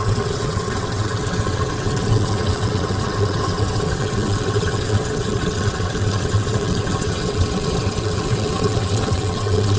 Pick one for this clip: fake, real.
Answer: fake